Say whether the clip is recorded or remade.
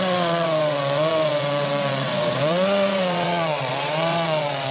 remade